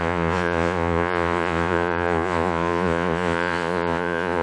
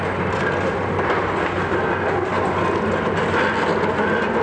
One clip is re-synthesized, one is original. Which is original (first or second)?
second